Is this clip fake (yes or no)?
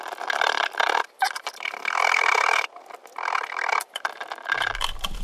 yes